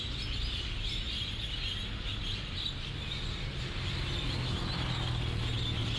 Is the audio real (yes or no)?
yes